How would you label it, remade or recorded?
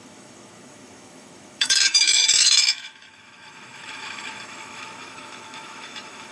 remade